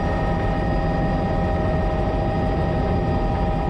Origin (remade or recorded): recorded